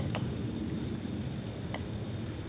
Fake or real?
real